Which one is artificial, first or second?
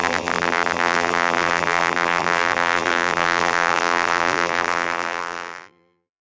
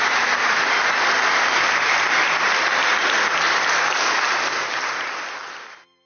first